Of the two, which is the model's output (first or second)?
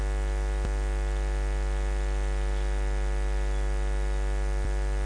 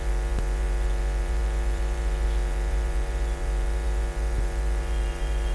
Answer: second